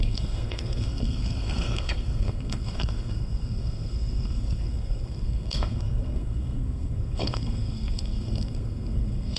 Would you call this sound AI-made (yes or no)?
yes